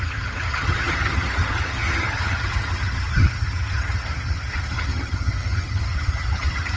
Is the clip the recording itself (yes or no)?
no